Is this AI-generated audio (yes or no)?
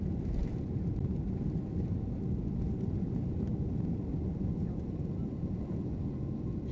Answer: no